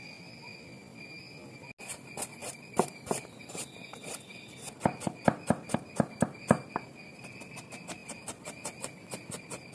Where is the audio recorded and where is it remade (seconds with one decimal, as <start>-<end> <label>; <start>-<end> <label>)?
0.0-9.7 recorded